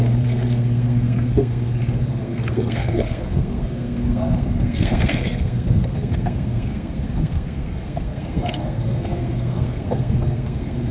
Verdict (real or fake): fake